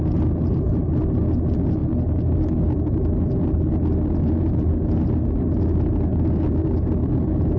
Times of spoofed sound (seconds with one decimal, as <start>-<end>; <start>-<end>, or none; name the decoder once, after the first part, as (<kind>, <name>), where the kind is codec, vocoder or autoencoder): 6.1-6.7 (codec, DAC)